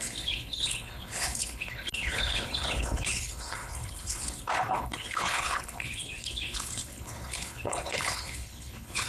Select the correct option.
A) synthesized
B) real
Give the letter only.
A